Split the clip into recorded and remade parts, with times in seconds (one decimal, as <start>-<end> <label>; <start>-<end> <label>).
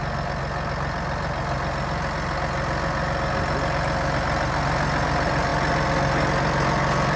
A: 0.0-7.2 recorded